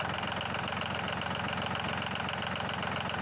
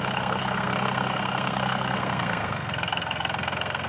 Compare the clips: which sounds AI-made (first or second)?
second